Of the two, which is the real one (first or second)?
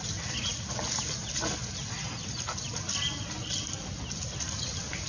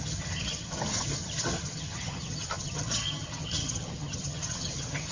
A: first